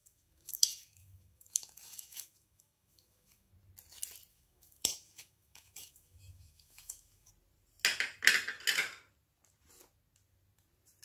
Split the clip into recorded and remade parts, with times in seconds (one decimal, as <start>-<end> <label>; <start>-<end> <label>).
0.0-3.5 remade; 3.5-4.3 recorded; 4.3-7.3 remade; 7.3-11.0 recorded